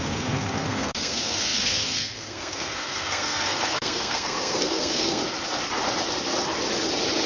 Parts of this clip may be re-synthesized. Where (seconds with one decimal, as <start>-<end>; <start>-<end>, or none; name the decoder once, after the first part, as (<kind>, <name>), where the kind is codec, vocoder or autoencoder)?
0.0-5.2 (codec, SNAC)